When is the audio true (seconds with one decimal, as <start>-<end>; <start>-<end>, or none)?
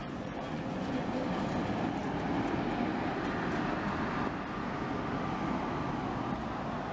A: 1.1-6.9